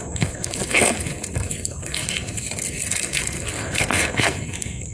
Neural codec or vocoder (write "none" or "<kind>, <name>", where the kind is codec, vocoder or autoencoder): codec, SNAC